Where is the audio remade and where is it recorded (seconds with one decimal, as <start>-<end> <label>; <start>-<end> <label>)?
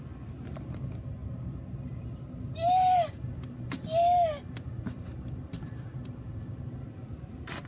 0.0-7.7 recorded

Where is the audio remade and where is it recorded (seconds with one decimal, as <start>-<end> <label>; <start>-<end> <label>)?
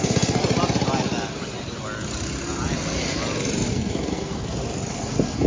0.0-0.4 remade; 0.4-3.7 recorded; 3.7-4.3 remade; 4.3-4.9 recorded; 4.9-5.5 remade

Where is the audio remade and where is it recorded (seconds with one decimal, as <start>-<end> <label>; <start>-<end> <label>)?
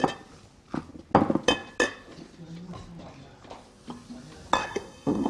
0.0-4.6 recorded; 4.6-5.3 remade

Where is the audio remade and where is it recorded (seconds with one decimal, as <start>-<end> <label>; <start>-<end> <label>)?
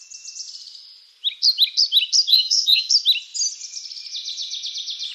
0.0-2.3 recorded; 2.3-2.9 remade; 2.9-5.1 recorded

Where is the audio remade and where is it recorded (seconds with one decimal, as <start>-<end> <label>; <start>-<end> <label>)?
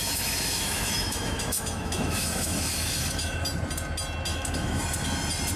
0.0-3.4 remade; 3.4-4.3 recorded; 4.3-4.8 remade; 4.8-5.6 recorded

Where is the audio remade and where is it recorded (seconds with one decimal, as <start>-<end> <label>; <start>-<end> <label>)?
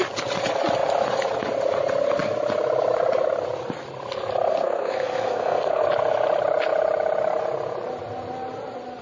0.0-4.5 recorded; 4.5-5.8 remade; 5.8-9.0 recorded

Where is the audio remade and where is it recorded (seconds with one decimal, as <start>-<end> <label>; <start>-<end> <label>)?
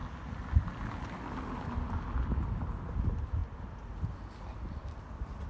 0.0-5.5 recorded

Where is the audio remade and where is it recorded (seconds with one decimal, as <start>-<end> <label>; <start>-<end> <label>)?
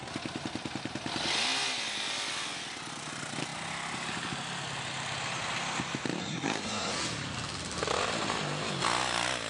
0.0-6.2 recorded; 6.2-6.9 remade; 6.9-9.5 recorded